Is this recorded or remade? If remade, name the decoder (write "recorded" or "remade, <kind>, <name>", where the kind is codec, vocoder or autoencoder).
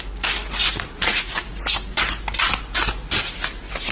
recorded